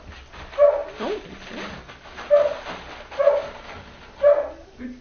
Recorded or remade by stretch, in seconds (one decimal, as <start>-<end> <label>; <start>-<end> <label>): 0.0-5.0 recorded